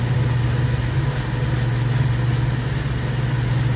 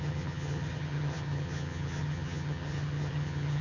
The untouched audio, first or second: first